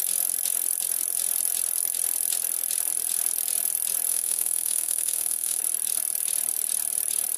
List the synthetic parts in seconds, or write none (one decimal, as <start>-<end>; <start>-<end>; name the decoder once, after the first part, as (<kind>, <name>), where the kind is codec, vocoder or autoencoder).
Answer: 4.1-5.6 (autoencoder, DAC-VAE)